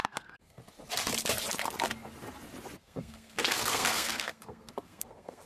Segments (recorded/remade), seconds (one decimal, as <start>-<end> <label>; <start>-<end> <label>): 0.0-0.6 remade; 0.6-2.8 recorded; 2.8-5.5 remade